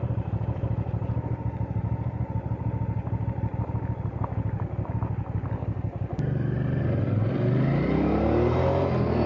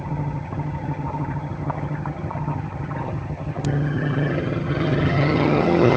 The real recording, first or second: first